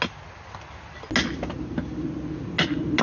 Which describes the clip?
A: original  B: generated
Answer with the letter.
A